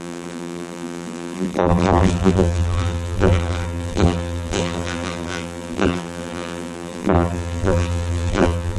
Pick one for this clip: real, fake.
fake